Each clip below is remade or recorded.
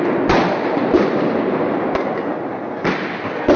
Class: recorded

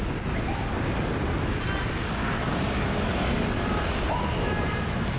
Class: recorded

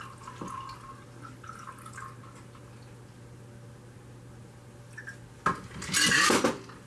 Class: recorded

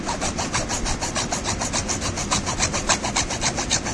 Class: recorded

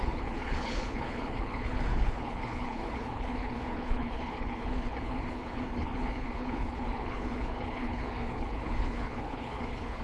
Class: remade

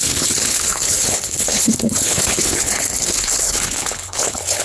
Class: remade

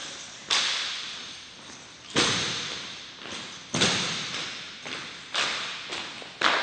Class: recorded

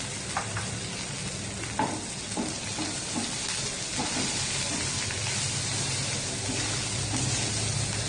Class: recorded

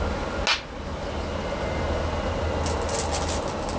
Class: recorded